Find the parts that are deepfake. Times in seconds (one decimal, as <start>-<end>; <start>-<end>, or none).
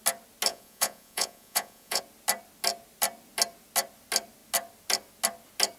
0.5-2.0